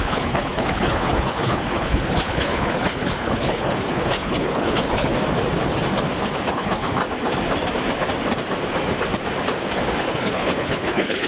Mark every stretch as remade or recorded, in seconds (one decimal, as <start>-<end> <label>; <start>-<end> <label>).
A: 0.0-5.1 remade; 5.1-6.5 recorded; 6.5-7.0 remade; 7.0-10.0 recorded; 10.0-11.3 remade